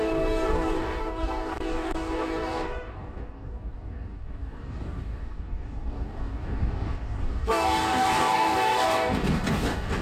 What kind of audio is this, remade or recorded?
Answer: remade